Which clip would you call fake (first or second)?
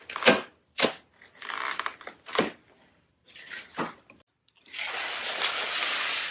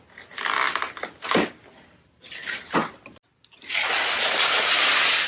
first